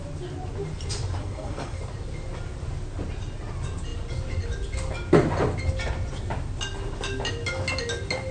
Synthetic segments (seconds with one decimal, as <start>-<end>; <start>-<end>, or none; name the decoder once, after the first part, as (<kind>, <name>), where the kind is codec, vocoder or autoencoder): 1.2-1.8 (codec, SNAC)